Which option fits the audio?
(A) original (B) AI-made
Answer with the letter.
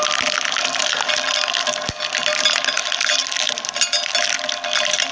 A